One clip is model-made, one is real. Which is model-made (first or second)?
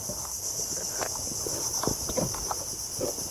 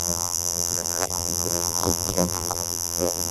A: second